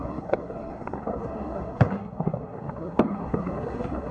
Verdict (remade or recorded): remade